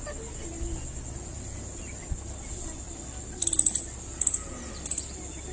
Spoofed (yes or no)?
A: no